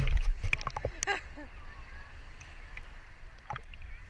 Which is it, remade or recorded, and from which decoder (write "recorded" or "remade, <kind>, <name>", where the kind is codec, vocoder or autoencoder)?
remade, vocoder, BigVGAN v2